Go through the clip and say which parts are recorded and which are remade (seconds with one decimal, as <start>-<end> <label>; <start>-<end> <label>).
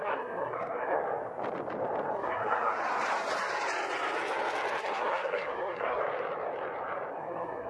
0.0-1.0 remade; 1.0-2.1 recorded; 2.1-2.8 remade; 2.8-4.8 recorded; 4.8-6.0 remade; 6.0-7.1 recorded; 7.1-7.7 remade